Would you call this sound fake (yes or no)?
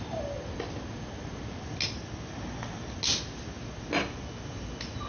no